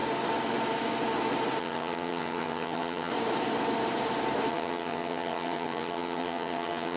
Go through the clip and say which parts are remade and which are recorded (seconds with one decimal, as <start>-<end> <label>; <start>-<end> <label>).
0.0-1.6 recorded; 1.6-3.1 remade; 3.1-4.5 recorded; 4.5-7.0 remade